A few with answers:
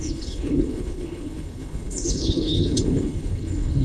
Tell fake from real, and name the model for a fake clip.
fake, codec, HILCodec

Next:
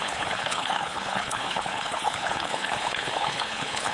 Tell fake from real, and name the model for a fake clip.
fake, codec, HILCodec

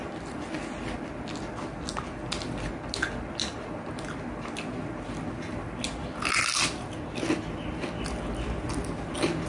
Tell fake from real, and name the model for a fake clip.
real